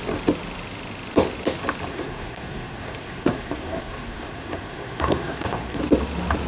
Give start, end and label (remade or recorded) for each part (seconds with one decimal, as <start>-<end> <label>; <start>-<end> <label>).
0.0-1.9 recorded; 1.9-5.8 remade; 5.8-6.5 recorded